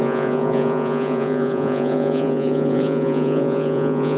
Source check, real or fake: fake